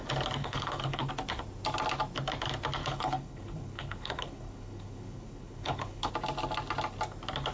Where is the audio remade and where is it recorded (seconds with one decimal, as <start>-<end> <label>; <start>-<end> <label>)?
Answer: 0.0-0.4 recorded; 0.4-1.1 remade; 1.1-2.8 recorded; 2.8-6.1 remade; 6.1-7.5 recorded